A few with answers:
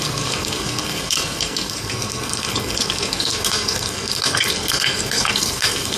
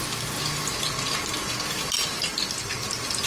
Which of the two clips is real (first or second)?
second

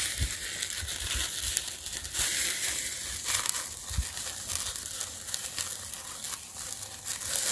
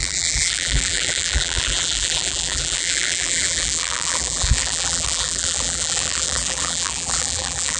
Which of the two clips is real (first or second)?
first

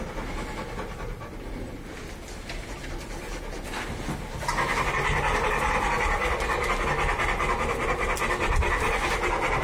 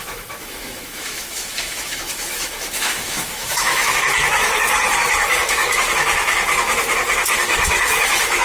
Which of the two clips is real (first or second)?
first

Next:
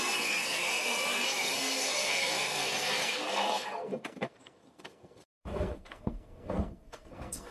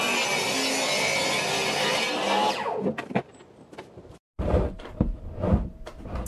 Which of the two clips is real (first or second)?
second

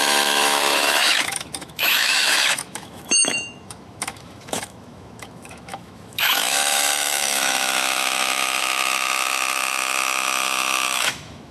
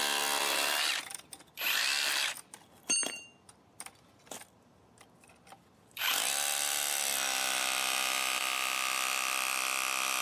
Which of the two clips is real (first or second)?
second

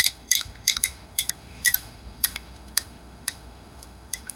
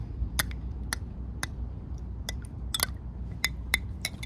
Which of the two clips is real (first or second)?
second